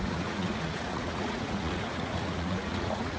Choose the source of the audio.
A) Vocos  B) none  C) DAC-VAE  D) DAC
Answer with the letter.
A